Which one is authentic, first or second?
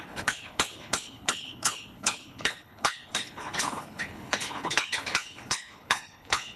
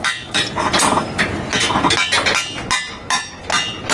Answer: second